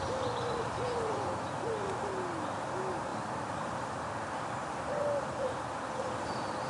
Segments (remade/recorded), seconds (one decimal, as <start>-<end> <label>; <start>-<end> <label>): 0.0-6.7 recorded